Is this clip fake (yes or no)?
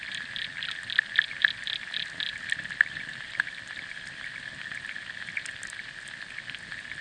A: no